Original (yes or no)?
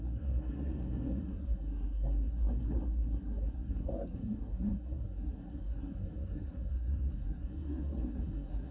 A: no